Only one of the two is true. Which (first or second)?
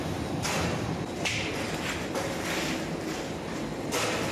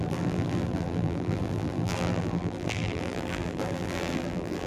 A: first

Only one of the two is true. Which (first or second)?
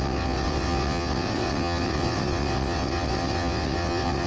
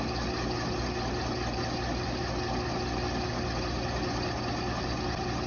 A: second